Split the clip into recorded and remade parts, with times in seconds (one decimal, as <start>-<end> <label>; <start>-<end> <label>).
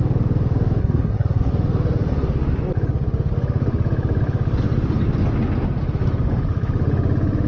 0.0-0.8 recorded; 0.8-1.5 remade; 1.5-7.5 recorded